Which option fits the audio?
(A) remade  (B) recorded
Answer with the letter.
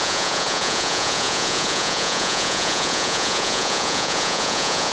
A